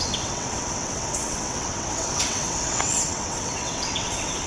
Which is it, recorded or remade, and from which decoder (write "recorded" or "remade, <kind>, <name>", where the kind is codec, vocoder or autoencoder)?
remade, vocoder, WaveNeXt